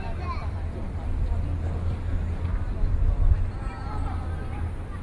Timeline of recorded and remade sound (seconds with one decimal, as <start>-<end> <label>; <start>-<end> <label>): 0.0-0.4 recorded; 0.4-3.4 remade; 3.4-5.0 recorded